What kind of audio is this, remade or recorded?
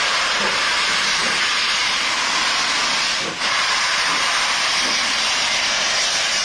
recorded